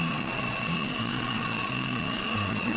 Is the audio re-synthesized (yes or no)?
yes